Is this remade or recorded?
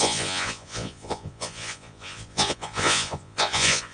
remade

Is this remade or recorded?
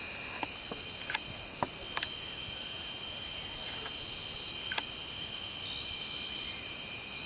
recorded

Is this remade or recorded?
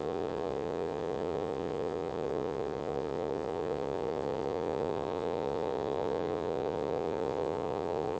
remade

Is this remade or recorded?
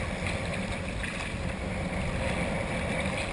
recorded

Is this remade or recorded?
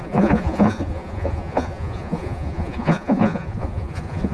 remade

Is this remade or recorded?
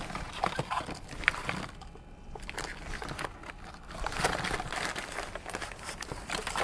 recorded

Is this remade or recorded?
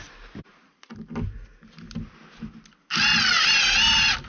recorded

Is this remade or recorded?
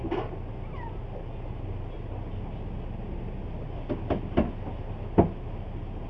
recorded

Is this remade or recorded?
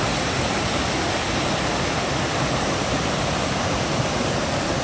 recorded